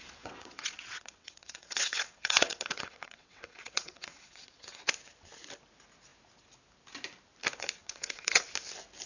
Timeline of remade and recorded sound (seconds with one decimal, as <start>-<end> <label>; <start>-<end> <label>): 0.0-4.9 remade; 4.9-7.8 recorded; 7.8-8.4 remade; 8.4-9.1 recorded